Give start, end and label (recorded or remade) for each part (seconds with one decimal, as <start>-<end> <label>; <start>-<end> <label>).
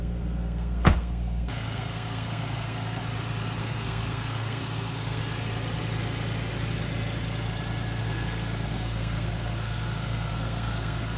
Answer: 0.0-3.0 remade; 3.0-3.6 recorded; 3.6-5.2 remade; 5.2-8.0 recorded; 8.0-11.2 remade